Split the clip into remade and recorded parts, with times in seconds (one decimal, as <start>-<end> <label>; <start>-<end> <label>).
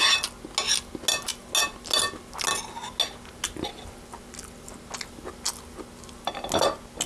0.0-7.1 recorded